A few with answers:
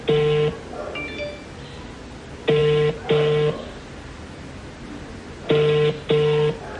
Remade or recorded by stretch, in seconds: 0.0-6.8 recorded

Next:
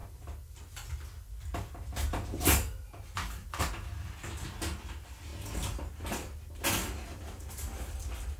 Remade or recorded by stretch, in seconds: 0.0-8.4 recorded